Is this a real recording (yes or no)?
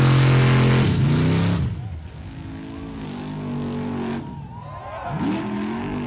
yes